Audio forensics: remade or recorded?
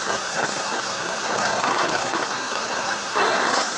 remade